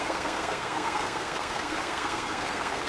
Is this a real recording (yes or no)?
no